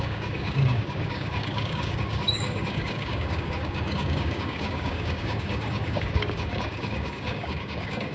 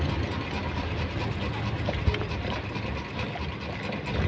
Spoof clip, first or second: first